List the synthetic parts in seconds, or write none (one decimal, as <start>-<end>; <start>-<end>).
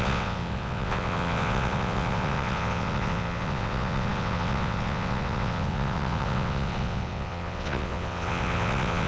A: 0.0-9.1